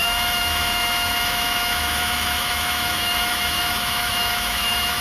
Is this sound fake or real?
fake